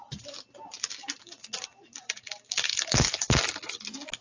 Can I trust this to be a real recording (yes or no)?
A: yes